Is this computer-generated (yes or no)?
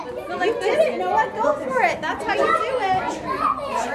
no